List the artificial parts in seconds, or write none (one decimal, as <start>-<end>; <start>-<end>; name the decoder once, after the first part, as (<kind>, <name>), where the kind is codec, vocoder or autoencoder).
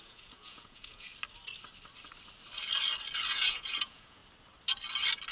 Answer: 0.0-1.1 (vocoder, Vocos); 3.3-4.2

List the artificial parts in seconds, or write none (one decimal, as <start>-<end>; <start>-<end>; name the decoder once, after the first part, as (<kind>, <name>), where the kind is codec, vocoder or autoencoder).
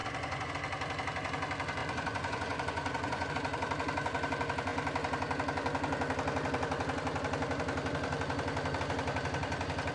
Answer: 0.0-0.5 (vocoder, Vocos); 1.8-3.3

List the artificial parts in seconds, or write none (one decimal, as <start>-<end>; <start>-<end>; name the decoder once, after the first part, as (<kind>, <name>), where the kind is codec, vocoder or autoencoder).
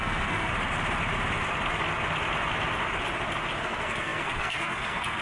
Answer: 0.0-0.5 (codec, SNAC); 3.6-5.2